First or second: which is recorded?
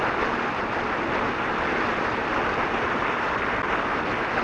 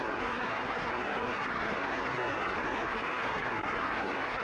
first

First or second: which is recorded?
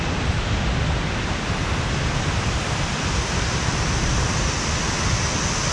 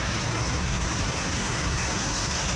first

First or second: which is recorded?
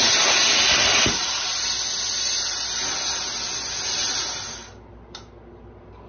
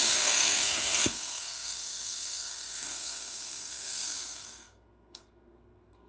first